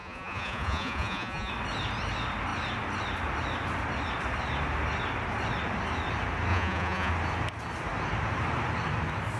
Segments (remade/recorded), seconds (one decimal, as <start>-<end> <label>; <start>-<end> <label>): 0.0-1.5 remade; 1.5-6.5 recorded; 6.5-7.1 remade; 7.1-9.4 recorded